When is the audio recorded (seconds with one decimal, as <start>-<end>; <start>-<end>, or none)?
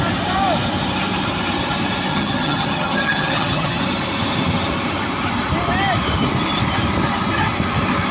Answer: 0.0-2.1; 3.8-8.1